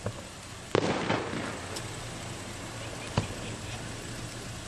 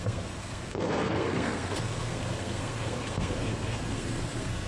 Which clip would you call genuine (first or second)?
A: first